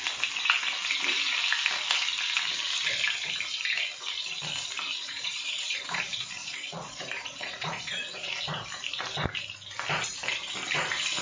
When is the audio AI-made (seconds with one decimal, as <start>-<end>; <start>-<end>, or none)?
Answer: 5.0-6.0; 6.4-8.3